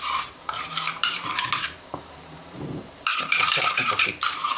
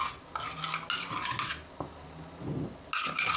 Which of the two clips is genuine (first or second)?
second